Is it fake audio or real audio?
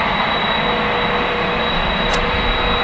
real